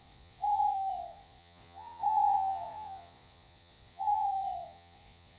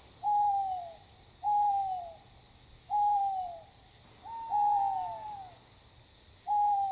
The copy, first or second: first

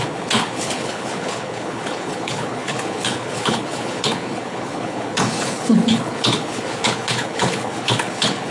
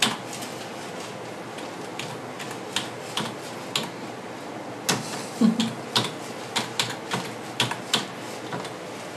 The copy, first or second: first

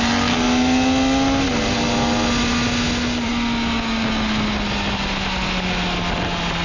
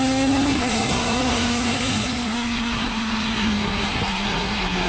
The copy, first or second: second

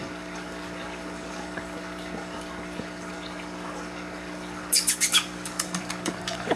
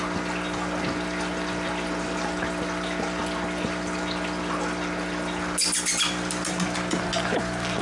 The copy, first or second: first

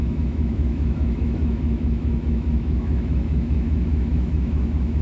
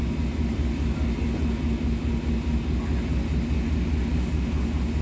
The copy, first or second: first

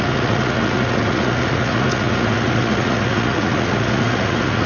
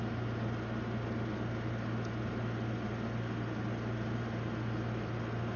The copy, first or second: first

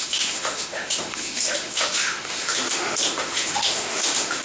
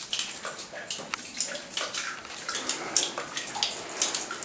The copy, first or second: first